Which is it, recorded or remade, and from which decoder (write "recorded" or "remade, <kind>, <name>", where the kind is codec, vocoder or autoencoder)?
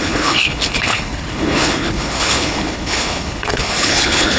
remade, codec, HILCodec